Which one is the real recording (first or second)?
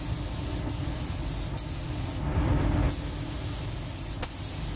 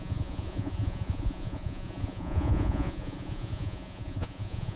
first